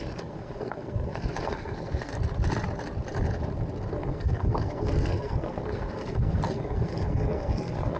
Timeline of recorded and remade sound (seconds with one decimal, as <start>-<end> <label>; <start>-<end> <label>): 0.0-2.1 remade; 2.1-3.9 recorded; 3.9-8.0 remade